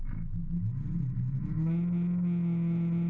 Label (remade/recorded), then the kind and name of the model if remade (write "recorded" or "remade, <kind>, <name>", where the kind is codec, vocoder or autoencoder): recorded